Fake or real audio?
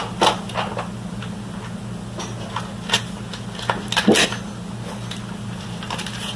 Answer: real